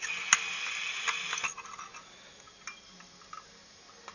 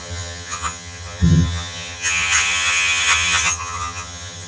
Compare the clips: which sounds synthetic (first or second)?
second